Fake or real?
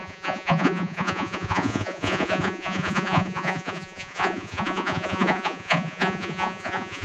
fake